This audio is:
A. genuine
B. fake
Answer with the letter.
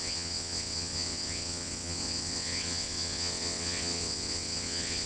B